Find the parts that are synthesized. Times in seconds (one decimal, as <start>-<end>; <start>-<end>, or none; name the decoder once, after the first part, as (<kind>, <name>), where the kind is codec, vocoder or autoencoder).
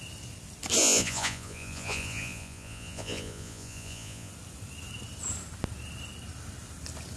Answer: 0.8-4.3 (vocoder, Vocos)